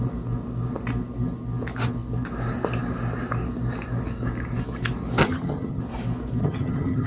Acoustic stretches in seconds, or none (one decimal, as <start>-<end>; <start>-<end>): 0.0-5.2; 5.8-6.4